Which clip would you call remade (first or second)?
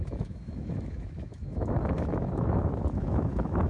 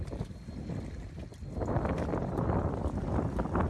first